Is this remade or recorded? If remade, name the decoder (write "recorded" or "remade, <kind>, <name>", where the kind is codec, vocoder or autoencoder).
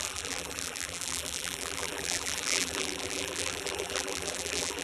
remade, vocoder, BigVGAN v2